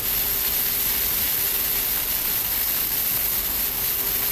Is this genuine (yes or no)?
yes